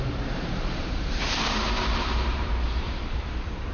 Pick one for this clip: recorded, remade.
remade